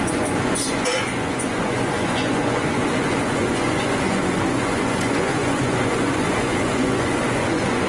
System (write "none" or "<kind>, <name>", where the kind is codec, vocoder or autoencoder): vocoder, Vocos